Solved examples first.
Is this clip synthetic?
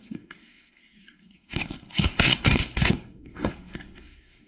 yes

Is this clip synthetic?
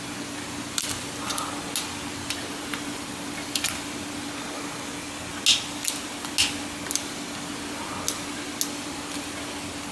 no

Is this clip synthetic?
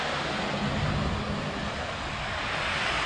no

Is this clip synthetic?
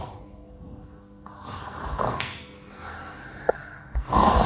yes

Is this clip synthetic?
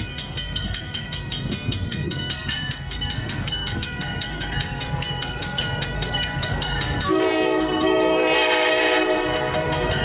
yes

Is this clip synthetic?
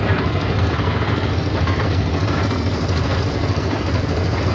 yes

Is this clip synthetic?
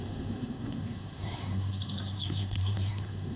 yes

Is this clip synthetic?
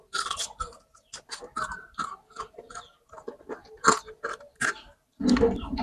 no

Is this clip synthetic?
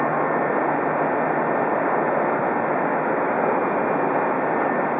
no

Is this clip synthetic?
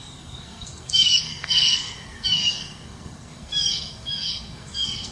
yes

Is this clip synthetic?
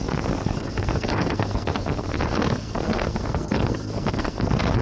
yes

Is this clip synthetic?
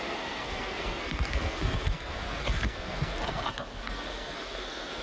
yes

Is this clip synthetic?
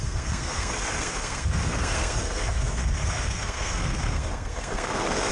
yes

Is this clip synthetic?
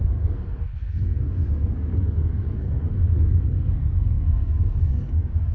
yes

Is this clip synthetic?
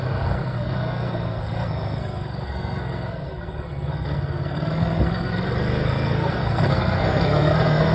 yes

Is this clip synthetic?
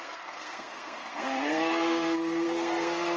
yes